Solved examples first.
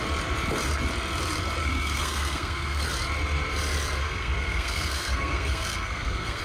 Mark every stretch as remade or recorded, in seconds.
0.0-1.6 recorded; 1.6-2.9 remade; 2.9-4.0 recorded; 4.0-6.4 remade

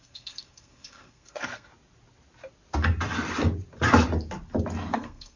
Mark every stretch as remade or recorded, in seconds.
0.0-1.7 remade; 1.7-4.9 recorded; 4.9-5.4 remade